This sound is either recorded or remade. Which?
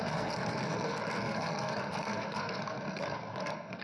remade